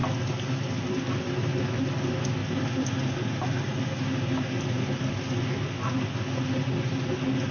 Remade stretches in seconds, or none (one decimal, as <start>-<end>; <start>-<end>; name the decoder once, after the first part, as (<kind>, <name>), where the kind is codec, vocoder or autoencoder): none